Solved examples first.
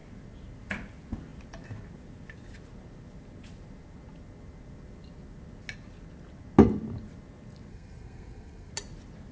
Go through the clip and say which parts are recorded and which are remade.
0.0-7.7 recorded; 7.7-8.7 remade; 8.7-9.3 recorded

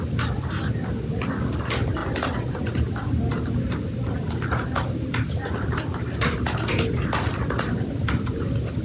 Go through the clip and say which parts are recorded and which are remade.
0.0-8.8 recorded

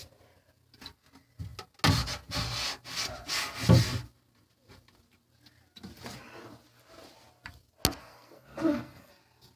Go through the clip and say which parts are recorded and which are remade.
0.0-8.0 recorded; 8.0-9.1 remade; 9.1-9.6 recorded

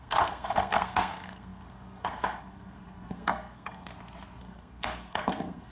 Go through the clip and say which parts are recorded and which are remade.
0.0-3.9 remade; 3.9-4.4 recorded; 4.4-5.7 remade

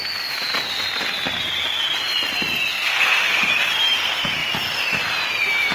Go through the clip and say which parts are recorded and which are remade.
0.0-2.7 recorded; 2.7-3.5 remade; 3.5-5.7 recorded

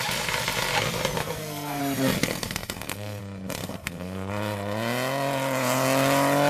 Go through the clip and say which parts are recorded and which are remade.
0.0-1.2 recorded; 1.2-1.8 remade; 1.8-2.2 recorded; 2.2-3.2 remade; 3.2-3.6 recorded; 3.6-4.3 remade; 4.3-6.5 recorded